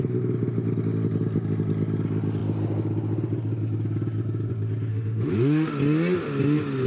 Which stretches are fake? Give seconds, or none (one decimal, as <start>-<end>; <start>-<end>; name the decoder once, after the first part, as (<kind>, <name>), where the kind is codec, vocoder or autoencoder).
4.9-5.7 (autoencoder, DAC-VAE)